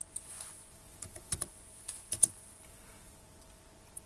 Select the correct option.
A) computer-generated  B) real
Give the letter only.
A